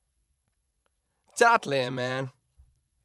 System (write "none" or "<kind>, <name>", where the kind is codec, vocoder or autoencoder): vocoder, Vocos